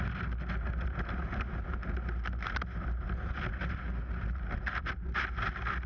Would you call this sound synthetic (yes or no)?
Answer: no